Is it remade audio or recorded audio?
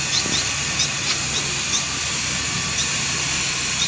recorded